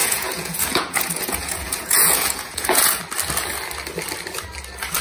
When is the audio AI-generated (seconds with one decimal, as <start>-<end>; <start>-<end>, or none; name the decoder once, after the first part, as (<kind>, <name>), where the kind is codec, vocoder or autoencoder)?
0.0-3.0 (vocoder, Vocos)